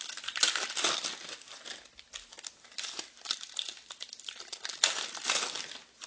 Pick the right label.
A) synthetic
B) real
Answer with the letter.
B